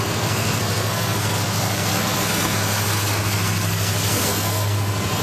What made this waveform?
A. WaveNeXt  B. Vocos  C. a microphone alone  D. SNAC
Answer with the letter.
D